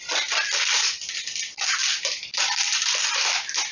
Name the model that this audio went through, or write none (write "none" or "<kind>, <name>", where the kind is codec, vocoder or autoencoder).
none